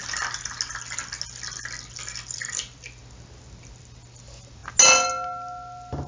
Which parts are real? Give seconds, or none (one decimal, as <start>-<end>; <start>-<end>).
0.0-6.1